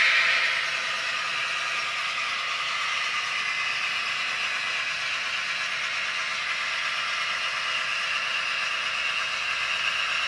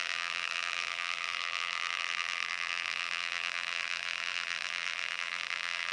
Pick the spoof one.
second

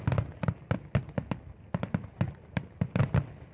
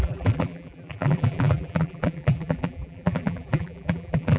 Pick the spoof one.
second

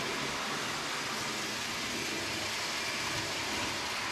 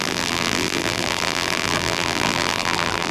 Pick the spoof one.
second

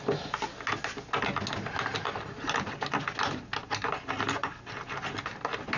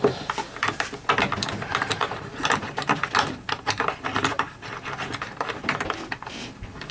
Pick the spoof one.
second